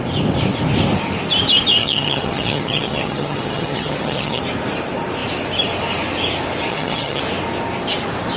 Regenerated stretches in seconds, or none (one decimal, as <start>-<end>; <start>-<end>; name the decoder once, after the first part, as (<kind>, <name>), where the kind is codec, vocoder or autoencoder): 1.8-4.4 (vocoder, HiFi-GAN); 6.7-7.2